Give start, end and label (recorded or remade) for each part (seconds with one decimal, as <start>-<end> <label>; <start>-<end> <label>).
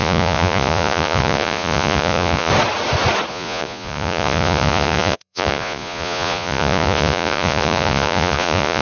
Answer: 0.0-2.5 remade; 2.5-3.3 recorded; 3.3-8.8 remade